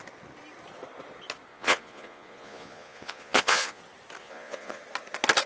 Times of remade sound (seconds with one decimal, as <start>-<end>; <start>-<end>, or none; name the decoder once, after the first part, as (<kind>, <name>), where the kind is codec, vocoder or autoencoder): 1.5-3.8 (vocoder, Vocos); 4.2-4.8